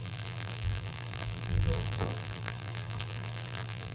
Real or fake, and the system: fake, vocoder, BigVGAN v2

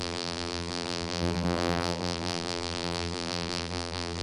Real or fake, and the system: fake, vocoder, BigVGAN v2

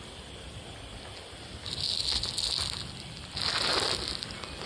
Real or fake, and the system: real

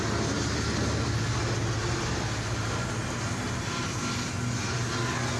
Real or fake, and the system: real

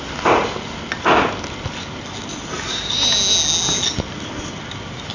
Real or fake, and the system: real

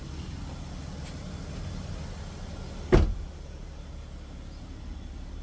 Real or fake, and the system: real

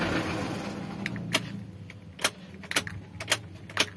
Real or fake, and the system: real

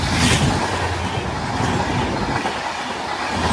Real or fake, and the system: real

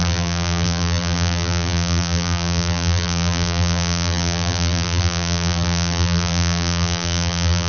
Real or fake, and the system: fake, vocoder, BigVGAN v2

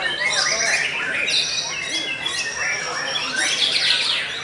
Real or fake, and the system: real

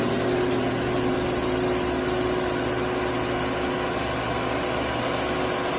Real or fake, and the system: real